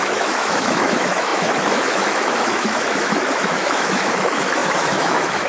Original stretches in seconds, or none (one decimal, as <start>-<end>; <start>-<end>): none